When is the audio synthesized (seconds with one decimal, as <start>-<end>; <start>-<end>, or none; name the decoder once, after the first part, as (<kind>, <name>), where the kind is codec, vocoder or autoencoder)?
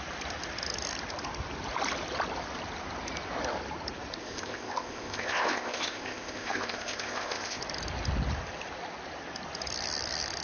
4.2-7.6 (codec, ZipCodec)